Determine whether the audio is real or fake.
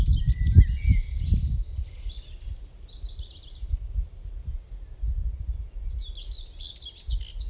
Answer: real